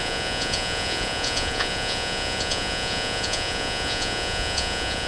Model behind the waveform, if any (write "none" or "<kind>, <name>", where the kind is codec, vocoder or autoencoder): vocoder, Vocos